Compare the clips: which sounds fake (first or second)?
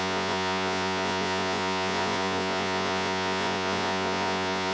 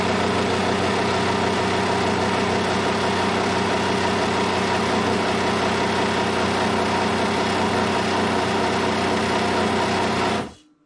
first